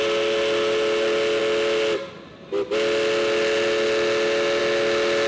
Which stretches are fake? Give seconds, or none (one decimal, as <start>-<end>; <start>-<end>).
none